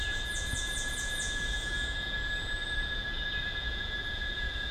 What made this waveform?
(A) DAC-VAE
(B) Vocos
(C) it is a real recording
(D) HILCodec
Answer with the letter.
B